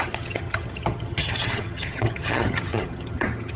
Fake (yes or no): yes